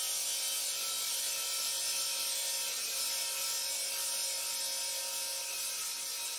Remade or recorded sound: recorded